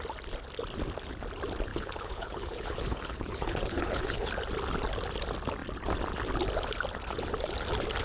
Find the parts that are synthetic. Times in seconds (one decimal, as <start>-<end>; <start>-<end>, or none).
1.7-4.3